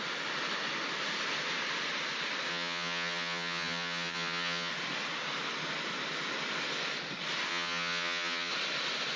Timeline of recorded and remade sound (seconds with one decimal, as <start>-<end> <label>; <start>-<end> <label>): 0.0-2.5 recorded; 2.5-4.7 remade; 4.7-7.5 recorded; 7.5-8.5 remade; 8.5-9.2 recorded